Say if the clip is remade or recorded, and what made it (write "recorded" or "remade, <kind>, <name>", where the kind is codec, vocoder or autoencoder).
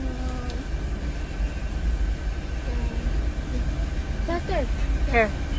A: recorded